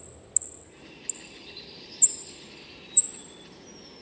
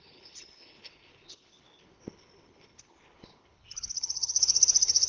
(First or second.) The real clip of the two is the first